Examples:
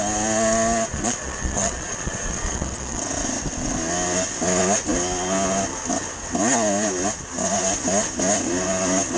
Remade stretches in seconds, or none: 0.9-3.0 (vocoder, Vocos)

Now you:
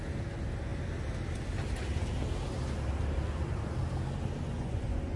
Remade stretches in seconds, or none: 4.4-5.2 (vocoder, Vocos)

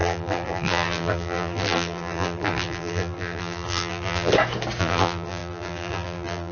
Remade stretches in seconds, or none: 0.0-4.3 (vocoder, BigVGAN v2); 4.8-6.5